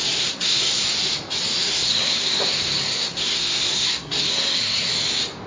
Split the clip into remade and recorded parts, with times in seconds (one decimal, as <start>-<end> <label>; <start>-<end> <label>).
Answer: 0.0-1.0 remade; 1.0-1.6 recorded; 1.6-4.9 remade; 4.9-5.5 recorded